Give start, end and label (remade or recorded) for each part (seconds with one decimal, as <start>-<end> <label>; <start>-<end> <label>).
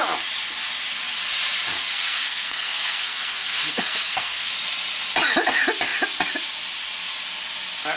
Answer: 0.0-1.7 recorded; 1.7-4.5 remade; 4.5-8.0 recorded